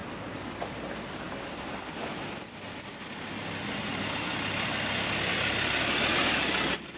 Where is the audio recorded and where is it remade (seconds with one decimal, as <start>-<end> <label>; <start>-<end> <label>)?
0.0-7.0 recorded